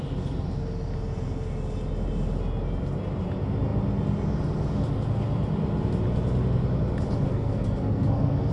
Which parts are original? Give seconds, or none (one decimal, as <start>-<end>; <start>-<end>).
0.0-7.3